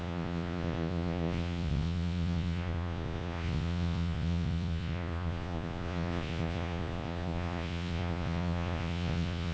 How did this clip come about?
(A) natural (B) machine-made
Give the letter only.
B